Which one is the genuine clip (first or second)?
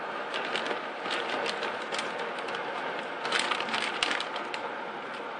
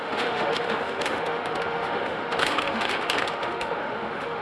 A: first